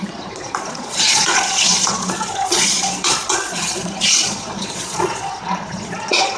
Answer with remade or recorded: remade